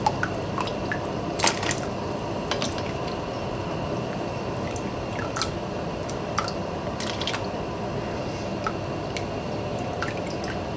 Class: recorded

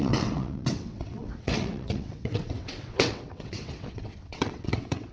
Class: remade